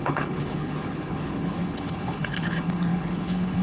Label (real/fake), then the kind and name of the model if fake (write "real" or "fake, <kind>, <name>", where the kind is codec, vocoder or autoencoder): fake, codec, HILCodec